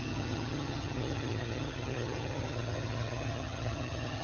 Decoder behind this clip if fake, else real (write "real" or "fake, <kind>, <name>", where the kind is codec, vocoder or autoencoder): fake, vocoder, HiFi-GAN